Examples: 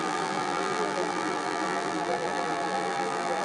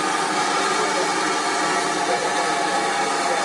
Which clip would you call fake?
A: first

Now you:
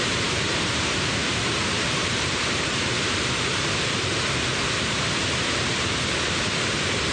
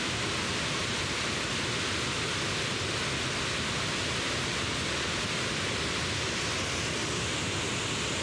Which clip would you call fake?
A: first